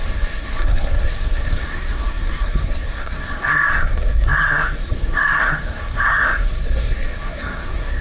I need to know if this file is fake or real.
fake